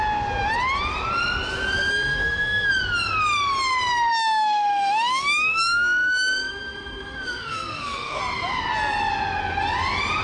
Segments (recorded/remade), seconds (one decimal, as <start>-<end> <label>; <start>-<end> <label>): 0.0-1.9 recorded; 1.9-2.7 remade; 2.7-4.1 recorded; 4.1-8.2 remade; 8.2-10.2 recorded